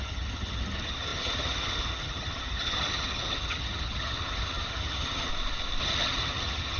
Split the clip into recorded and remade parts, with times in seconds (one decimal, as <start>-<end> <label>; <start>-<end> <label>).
0.0-5.3 remade; 5.3-5.8 recorded; 5.8-6.8 remade